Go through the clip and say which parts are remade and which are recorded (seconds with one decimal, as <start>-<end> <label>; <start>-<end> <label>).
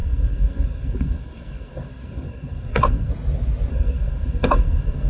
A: 0.0-3.1 remade; 3.1-3.7 recorded; 3.7-5.1 remade